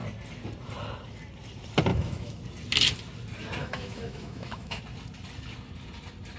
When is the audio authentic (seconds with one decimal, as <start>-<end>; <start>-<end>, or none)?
0.0-1.9; 2.4-3.6; 4.8-6.4